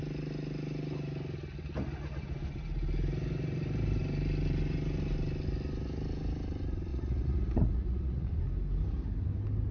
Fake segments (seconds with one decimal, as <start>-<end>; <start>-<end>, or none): 6.9-8.3